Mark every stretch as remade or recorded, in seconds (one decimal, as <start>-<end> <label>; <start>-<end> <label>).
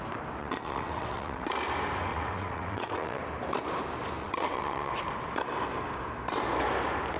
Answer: 0.0-0.4 recorded; 0.4-1.5 remade; 1.5-2.1 recorded; 2.1-3.2 remade; 3.2-4.2 recorded; 4.2-4.9 remade; 4.9-7.2 recorded